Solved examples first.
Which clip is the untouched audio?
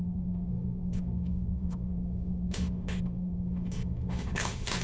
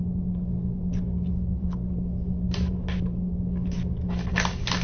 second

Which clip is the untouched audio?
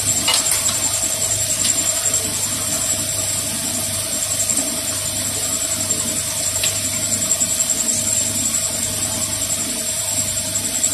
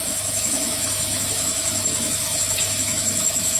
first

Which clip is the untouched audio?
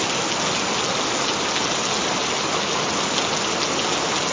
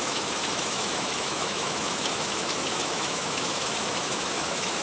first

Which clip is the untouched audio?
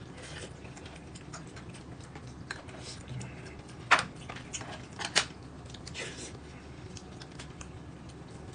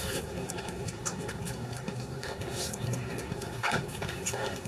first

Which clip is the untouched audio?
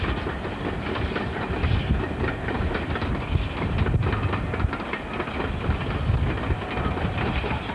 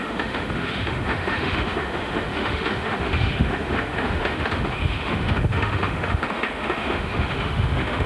first